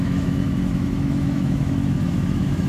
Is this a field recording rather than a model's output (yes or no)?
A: no